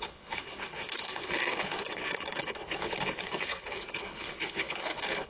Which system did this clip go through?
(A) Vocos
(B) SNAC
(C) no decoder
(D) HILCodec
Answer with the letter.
D